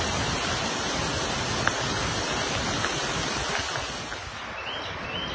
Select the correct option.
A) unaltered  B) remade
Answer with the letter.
A